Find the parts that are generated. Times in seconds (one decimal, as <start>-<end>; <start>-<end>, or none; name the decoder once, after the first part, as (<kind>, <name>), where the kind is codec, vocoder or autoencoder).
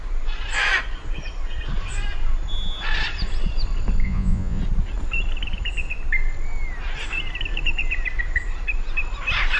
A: 4.0-4.6 (vocoder, Vocos)